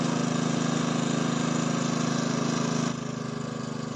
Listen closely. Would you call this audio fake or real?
real